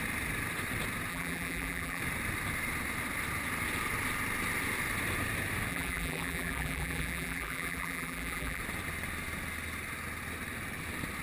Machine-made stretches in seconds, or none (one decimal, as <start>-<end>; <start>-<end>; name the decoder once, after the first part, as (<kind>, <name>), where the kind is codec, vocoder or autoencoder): 1.1-2.0 (vocoder, BigVGAN v2); 5.7-8.6